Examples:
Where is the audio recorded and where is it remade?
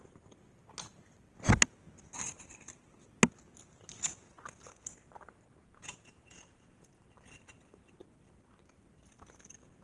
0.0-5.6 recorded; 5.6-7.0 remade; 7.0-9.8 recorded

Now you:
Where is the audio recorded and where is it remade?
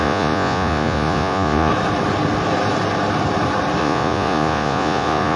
0.0-1.7 remade; 1.7-3.8 recorded; 3.8-5.4 remade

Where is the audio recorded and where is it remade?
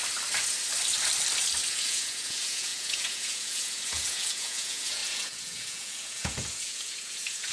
0.0-1.7 recorded; 1.7-7.5 remade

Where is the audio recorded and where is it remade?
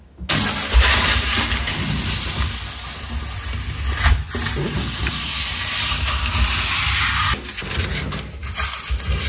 0.0-9.3 recorded